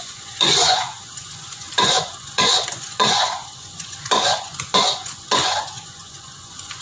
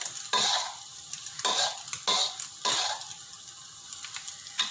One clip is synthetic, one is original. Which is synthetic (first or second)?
first